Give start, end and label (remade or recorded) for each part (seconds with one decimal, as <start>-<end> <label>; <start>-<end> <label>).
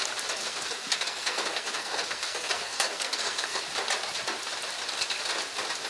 0.0-0.4 recorded; 0.4-3.6 remade; 3.6-5.9 recorded